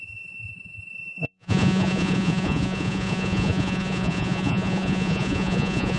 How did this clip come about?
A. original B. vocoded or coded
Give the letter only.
B